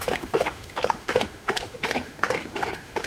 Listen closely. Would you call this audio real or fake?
fake